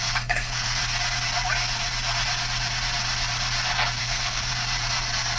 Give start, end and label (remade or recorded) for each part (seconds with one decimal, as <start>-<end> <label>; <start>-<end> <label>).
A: 0.0-0.8 remade; 0.8-4.0 recorded; 4.0-4.5 remade; 4.5-5.4 recorded